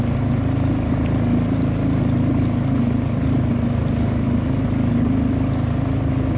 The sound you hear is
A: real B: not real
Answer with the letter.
A